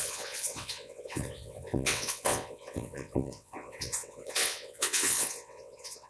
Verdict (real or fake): fake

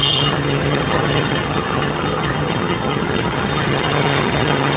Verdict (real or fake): fake